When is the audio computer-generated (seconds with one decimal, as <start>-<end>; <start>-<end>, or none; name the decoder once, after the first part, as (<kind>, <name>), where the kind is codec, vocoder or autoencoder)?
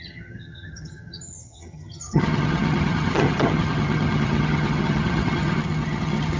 0.0-6.4 (vocoder, HiFi-GAN)